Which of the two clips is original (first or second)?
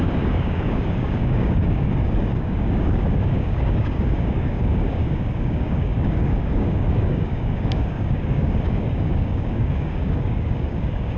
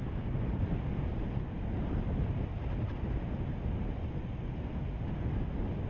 second